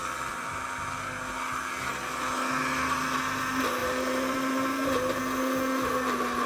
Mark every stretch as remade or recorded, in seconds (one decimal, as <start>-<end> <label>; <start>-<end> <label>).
0.0-3.8 recorded; 3.8-5.2 remade; 5.2-6.5 recorded